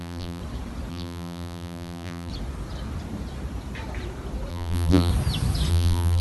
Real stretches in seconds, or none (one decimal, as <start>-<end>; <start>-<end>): 0.4-0.9; 2.3-4.5; 5.1-5.7